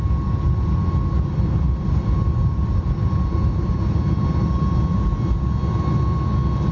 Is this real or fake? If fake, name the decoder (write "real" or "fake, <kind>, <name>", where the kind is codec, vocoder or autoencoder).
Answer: real